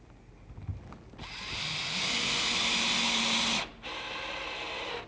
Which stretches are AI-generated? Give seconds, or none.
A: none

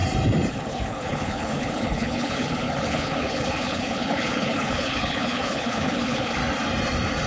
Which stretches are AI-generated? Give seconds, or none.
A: 0.5-6.4 (codec, HILCodec)

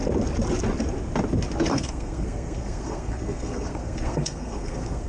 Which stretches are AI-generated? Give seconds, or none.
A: 1.7-5.1 (codec, SNAC)

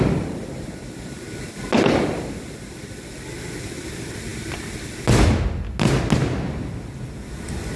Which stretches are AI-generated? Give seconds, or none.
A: none

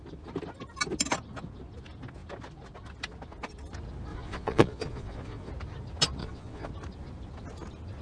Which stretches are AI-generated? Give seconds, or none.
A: 4.1-5.5 (vocoder, Vocos); 6.2-6.7